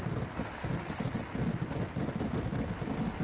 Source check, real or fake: real